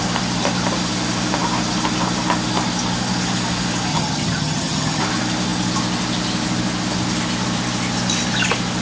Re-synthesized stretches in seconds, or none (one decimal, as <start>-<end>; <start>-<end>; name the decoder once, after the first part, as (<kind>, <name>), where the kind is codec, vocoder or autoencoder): 3.9-5.0 (vocoder, HiFi-GAN)